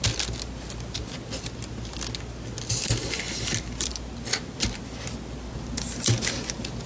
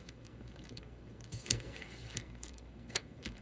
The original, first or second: first